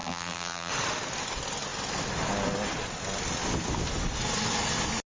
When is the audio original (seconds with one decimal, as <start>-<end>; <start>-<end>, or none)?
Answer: 0.7-5.1